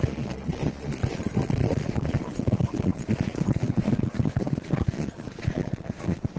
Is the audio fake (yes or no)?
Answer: yes